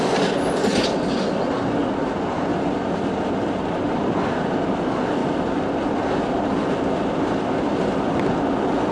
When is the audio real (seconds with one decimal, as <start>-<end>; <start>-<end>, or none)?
0.0-8.9